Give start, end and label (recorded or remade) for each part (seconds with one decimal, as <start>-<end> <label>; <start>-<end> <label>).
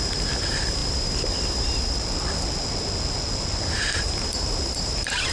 0.0-0.8 remade; 0.8-3.7 recorded; 3.7-5.3 remade